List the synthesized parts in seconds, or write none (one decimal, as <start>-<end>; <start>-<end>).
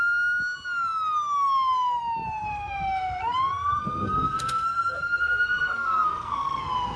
2.4-6.6